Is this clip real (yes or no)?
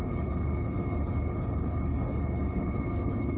no